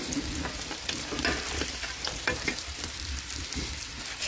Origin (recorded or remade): remade